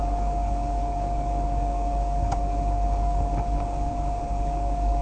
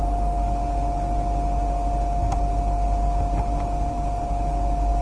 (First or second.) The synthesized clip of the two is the first